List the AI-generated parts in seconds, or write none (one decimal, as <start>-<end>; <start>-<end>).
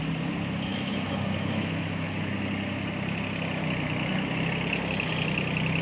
0.7-2.2